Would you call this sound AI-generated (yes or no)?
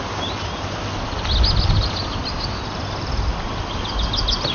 no